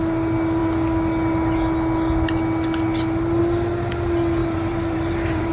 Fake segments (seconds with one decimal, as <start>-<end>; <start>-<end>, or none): 4.4-5.5